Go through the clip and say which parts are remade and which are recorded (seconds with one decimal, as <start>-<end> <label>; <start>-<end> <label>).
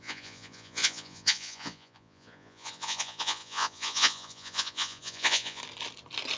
0.0-5.6 remade; 5.6-6.4 recorded